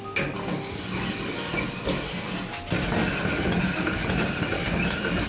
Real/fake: real